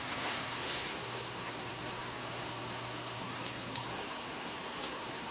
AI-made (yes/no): yes